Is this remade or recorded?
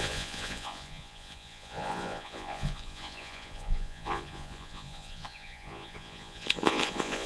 remade